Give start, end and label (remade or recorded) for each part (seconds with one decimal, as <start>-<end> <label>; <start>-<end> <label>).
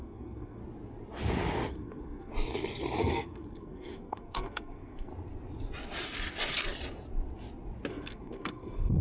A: 0.0-0.6 remade; 0.6-1.7 recorded; 1.7-2.3 remade; 2.3-3.0 recorded; 3.0-5.1 remade; 5.1-7.9 recorded; 7.9-9.0 remade